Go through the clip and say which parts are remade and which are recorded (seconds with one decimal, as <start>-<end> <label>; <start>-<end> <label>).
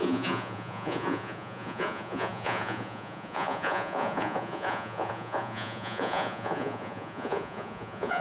0.0-8.2 remade